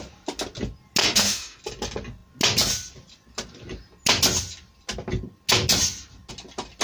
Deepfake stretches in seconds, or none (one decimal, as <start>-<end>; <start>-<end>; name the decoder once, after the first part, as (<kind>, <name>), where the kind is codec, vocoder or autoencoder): 1.0-1.6 (autoencoder, DAC-VAE)

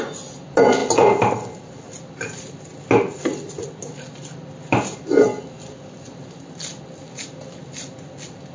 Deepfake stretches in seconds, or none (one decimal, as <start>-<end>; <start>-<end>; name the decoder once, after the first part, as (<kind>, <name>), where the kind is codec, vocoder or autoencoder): none

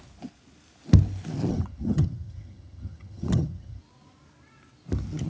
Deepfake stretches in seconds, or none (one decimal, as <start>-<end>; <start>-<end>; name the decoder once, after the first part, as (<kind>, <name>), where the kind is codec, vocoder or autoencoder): 1.5-3.8 (vocoder, HiFi-GAN)